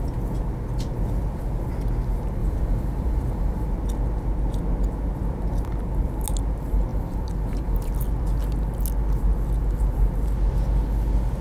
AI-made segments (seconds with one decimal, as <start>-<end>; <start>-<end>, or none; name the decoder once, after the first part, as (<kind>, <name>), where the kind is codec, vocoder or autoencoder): 2.4-3.7 (vocoder, BigVGAN v2); 6.9-7.9